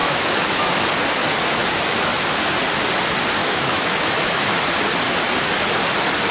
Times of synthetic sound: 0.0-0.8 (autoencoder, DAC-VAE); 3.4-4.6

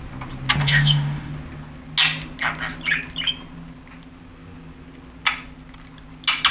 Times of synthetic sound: 0.6-1.3 (autoencoder, DAC-VAE)

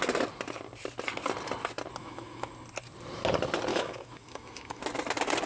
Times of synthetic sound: 2.0-2.5 (autoencoder, DAC-VAE); 3.7-4.8